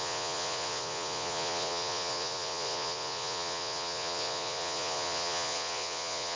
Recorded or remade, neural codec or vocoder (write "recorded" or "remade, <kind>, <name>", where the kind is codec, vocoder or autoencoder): remade, vocoder, Vocos